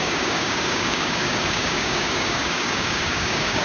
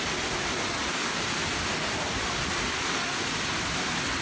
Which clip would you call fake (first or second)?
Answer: first